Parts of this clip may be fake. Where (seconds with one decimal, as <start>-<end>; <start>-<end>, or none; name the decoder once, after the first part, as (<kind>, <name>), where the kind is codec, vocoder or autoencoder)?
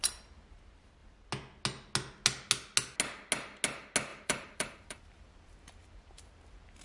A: 4.1-6.3 (vocoder, BigVGAN v2)